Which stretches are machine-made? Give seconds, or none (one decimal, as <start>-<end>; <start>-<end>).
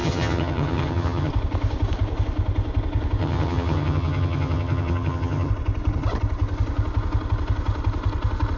0.0-1.3; 3.2-5.5